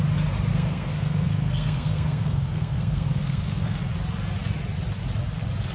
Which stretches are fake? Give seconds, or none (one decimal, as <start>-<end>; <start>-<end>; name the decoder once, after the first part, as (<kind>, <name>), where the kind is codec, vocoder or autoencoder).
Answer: 0.5-3.8 (codec, SNAC)